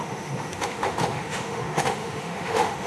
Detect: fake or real fake